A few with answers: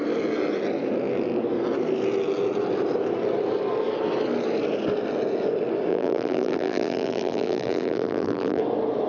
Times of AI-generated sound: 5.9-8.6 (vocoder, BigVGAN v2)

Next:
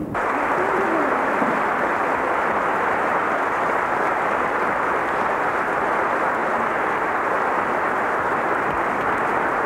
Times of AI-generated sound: 2.5-3.2 (vocoder, BigVGAN v2); 4.0-6.4; 7.7-9.7

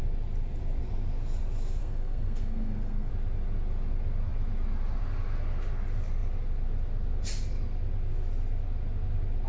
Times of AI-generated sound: 1.8-3.1 (codec, SNAC)